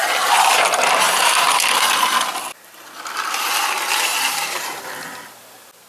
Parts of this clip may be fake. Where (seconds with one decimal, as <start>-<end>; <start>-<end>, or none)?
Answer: 0.5-1.6; 4.1-4.8